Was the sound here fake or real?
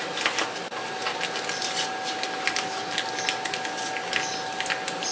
real